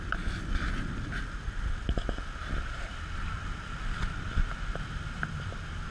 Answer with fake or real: real